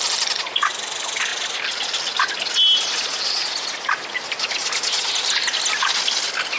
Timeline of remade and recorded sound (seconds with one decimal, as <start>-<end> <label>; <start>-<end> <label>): 0.0-6.6 recorded